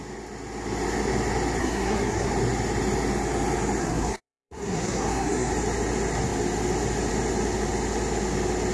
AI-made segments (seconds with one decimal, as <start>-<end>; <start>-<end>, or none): 1.6-2.3; 3.8-5.5